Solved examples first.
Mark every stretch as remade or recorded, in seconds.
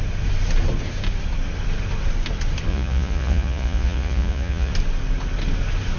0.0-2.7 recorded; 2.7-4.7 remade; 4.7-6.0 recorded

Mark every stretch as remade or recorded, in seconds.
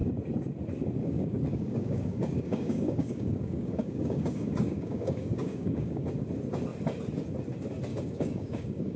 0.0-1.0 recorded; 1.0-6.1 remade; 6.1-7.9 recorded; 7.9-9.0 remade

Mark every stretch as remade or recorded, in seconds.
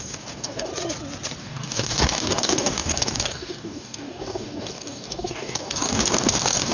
0.0-0.7 remade; 0.7-1.4 recorded; 1.4-6.7 remade